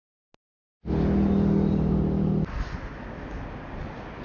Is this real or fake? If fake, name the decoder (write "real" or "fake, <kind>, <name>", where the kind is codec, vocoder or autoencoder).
real